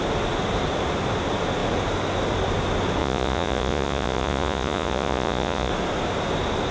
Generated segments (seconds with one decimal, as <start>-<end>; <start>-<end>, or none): 3.0-5.7

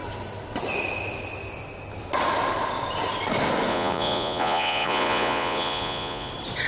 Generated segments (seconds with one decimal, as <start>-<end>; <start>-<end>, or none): 3.7-6.3

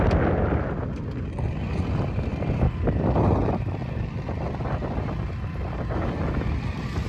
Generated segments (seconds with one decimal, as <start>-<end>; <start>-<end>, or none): none

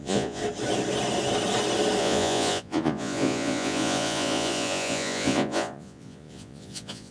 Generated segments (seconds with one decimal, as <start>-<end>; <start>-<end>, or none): 0.0-0.4; 2.0-7.1

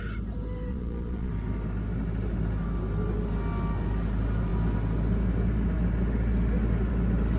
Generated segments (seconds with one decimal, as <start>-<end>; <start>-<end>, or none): 0.7-1.3

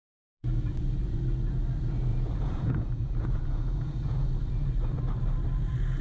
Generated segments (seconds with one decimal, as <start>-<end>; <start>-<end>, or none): 0.0-1.2; 2.1-4.5